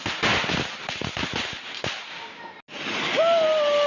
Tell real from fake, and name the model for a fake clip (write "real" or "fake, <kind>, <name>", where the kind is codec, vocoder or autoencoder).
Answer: real